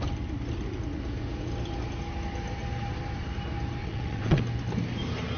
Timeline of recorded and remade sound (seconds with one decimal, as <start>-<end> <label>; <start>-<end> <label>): 0.0-3.8 recorded; 3.8-4.4 remade; 4.4-5.4 recorded